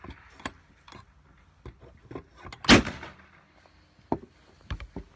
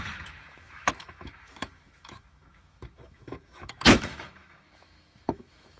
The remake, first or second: second